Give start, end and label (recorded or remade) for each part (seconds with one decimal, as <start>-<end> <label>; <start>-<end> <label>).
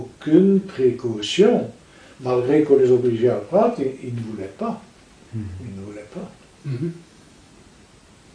0.0-6.6 recorded; 6.6-7.5 remade; 7.5-8.3 recorded